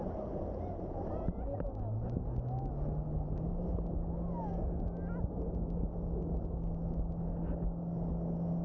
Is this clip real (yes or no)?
yes